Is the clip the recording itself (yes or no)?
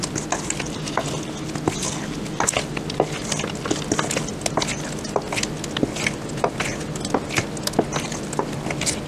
yes